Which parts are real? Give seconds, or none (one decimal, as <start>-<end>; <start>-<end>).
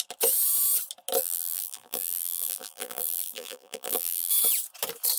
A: 0.0-1.2; 4.3-5.2